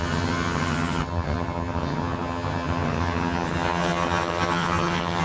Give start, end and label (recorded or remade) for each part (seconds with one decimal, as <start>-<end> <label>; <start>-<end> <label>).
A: 0.0-5.2 remade